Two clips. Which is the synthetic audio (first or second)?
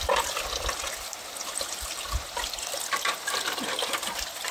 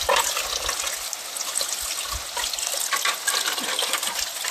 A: first